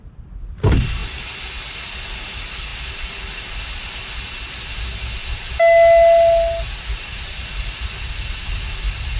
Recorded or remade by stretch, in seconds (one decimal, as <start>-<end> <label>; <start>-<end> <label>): 0.0-9.2 recorded